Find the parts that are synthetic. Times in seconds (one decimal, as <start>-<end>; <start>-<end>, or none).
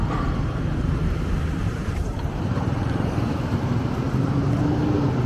1.0-3.9